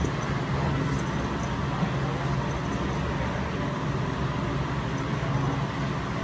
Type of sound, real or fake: real